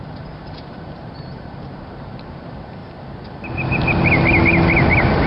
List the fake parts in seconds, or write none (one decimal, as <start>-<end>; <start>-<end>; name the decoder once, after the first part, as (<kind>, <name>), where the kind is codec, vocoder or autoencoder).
0.0-2.8 (vocoder, BigVGAN v2)